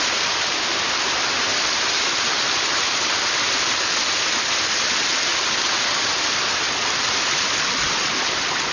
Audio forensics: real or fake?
real